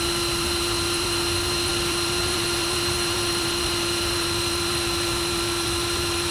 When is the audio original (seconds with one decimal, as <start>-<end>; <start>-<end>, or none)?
none